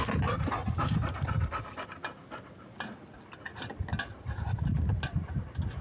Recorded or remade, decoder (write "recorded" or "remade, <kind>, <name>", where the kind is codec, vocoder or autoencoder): recorded